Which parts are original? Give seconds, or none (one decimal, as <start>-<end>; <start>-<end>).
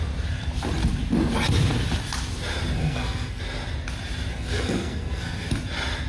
0.0-2.8; 3.4-4.3; 5.5-6.1